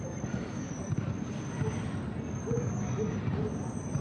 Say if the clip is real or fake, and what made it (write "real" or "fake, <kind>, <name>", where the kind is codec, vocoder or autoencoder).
real